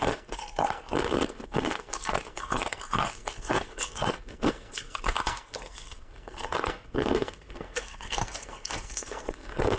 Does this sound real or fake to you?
fake